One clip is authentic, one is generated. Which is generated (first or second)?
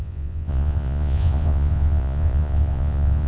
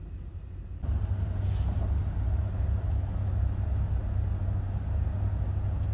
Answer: first